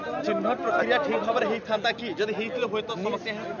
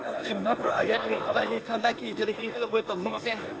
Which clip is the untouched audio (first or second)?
first